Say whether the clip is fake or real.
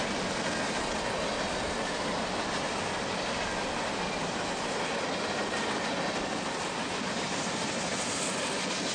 real